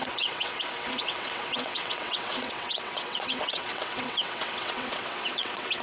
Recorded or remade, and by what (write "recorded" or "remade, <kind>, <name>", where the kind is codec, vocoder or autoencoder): remade, vocoder, WaveNeXt